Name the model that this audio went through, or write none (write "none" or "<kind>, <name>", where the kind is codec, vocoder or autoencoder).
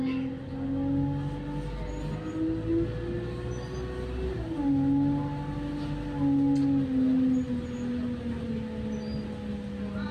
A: none